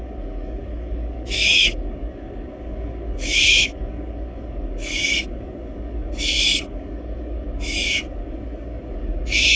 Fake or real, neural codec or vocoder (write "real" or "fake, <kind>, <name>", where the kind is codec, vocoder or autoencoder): fake, codec, DAC